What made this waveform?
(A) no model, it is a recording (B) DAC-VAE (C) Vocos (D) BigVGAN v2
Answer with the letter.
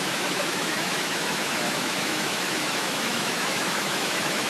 B